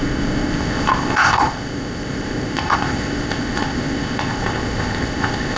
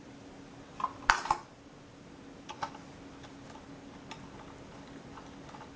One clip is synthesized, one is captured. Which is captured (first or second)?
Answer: second